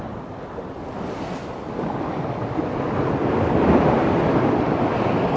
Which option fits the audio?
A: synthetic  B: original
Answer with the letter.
B